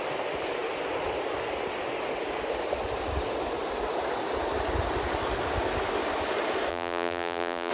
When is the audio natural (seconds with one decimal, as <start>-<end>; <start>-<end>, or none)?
0.0-6.7